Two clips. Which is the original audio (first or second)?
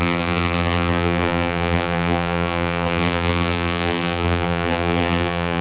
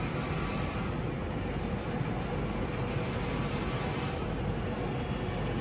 second